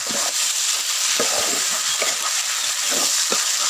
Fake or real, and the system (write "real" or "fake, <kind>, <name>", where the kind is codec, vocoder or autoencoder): real